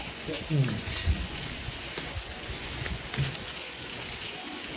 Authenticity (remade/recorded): remade